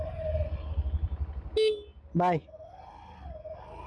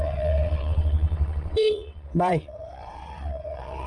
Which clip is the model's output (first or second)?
second